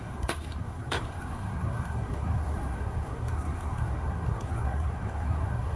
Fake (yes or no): yes